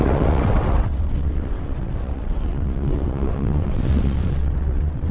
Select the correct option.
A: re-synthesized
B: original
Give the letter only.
A